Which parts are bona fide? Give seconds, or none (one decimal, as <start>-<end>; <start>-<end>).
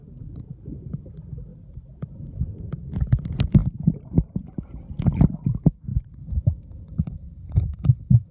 0.0-8.3